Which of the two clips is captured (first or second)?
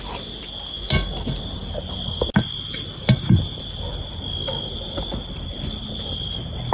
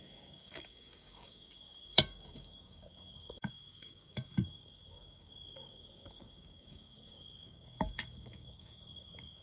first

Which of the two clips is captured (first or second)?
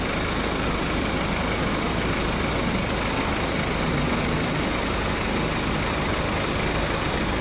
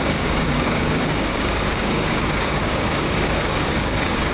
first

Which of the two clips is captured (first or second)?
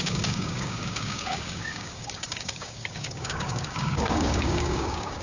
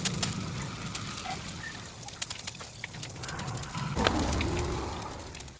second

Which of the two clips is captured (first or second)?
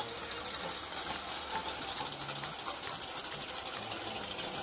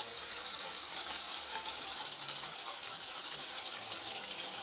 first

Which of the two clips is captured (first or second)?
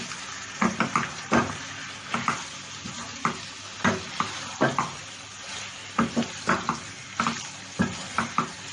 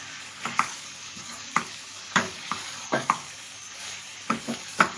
first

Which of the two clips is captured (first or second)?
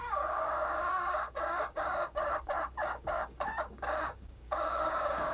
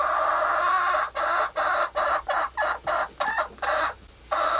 second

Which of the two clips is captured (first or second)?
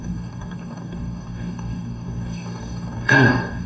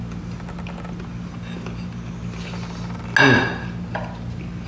second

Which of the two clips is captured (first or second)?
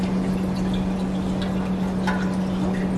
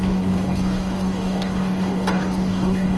first